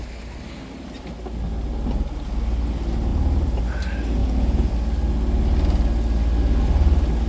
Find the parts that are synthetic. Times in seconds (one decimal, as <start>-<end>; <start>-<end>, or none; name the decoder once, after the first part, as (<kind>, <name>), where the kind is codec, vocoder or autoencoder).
4.2-4.7 (vocoder, Vocos)